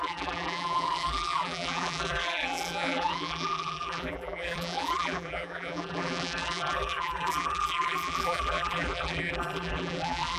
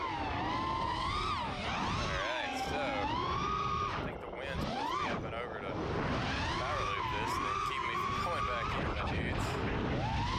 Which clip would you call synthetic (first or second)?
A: first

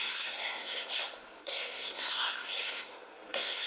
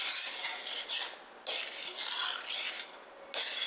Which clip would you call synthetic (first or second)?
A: first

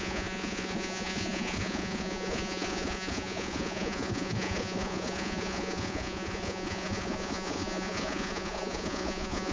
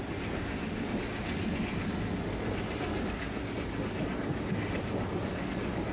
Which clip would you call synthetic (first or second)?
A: first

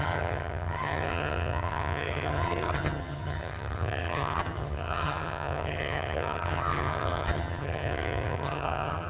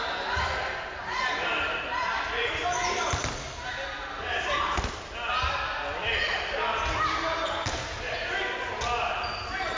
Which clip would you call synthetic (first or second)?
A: first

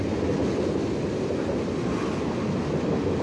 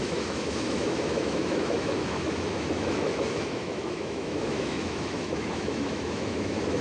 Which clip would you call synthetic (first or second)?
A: second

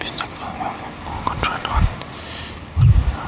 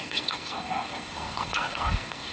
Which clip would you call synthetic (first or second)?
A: second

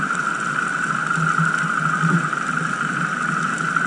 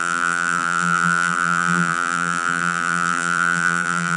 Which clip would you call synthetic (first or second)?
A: second